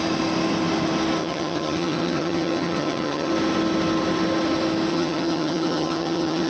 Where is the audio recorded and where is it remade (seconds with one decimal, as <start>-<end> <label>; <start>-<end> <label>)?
0.0-1.2 recorded; 1.2-3.3 remade; 3.3-4.9 recorded; 4.9-6.5 remade